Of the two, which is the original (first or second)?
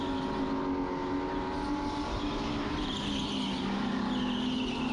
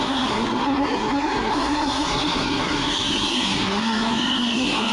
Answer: first